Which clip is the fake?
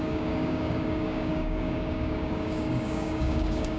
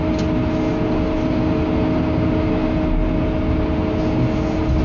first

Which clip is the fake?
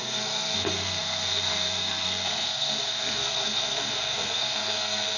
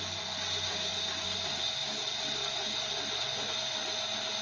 first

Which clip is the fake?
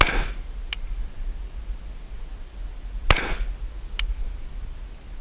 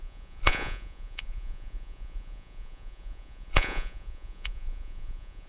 second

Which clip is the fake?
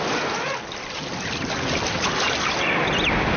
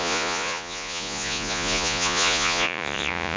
second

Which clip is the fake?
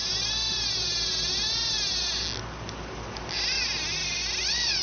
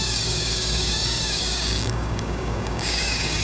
second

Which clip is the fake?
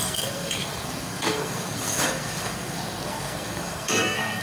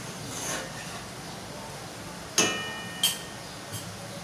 first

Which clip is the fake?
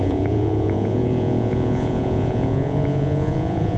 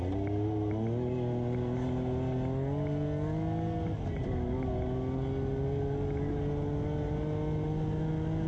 first